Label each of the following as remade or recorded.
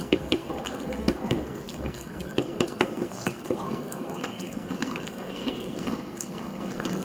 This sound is remade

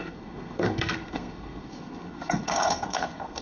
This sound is remade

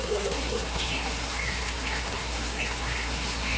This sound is remade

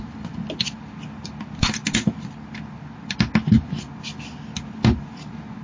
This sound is recorded